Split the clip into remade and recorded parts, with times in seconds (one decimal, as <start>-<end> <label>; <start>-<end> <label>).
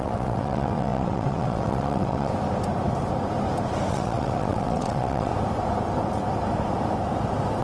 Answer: 0.0-2.3 remade; 2.3-3.9 recorded; 3.9-5.3 remade; 5.3-7.6 recorded